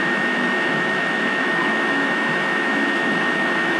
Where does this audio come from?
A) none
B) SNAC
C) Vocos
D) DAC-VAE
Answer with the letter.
D